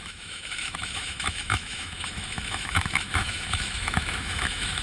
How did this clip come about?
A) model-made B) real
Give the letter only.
A